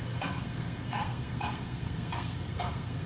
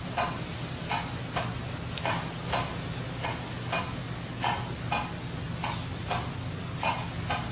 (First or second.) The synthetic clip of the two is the first